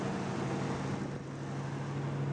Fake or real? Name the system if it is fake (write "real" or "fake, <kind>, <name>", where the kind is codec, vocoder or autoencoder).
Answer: real